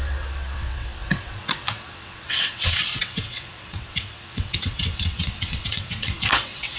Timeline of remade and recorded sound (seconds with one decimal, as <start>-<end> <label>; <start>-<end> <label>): 0.0-6.8 remade